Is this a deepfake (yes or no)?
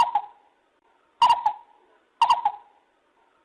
no